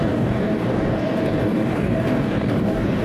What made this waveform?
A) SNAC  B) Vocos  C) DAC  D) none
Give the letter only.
C